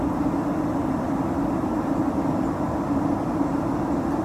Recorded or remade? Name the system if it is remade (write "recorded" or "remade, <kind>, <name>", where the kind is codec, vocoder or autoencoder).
recorded